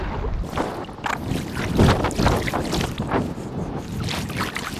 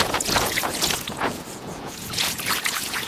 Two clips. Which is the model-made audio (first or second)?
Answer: second